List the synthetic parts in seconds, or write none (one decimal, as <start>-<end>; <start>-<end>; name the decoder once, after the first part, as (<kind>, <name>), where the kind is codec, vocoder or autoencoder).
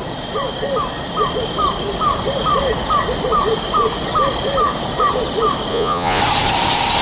5.7-6.2 (vocoder, Vocos)